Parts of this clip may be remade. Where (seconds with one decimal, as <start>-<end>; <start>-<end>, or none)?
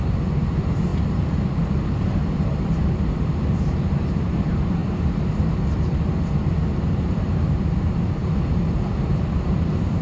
0.0-4.8; 6.9-10.0